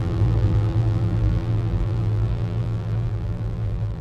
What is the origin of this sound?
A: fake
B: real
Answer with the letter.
A